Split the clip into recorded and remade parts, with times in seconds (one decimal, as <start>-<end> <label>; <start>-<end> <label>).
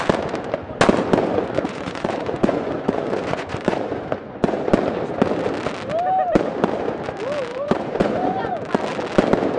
0.0-1.2 recorded; 1.2-4.7 remade; 4.7-7.5 recorded; 7.5-8.5 remade; 8.5-9.6 recorded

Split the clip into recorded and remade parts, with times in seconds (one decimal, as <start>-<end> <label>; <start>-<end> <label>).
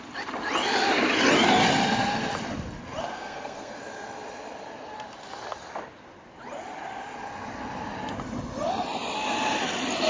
0.0-3.0 recorded; 3.0-3.8 remade; 3.8-10.1 recorded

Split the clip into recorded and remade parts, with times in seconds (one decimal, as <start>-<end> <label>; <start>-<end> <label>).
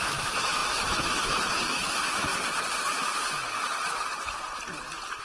0.0-2.3 remade; 2.3-5.2 recorded